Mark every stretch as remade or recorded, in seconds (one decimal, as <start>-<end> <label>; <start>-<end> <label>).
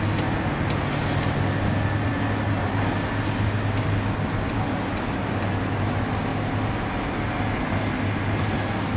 0.0-9.0 recorded